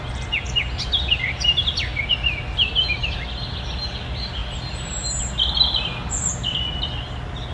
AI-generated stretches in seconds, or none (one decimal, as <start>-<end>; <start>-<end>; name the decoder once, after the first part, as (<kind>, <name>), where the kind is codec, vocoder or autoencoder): none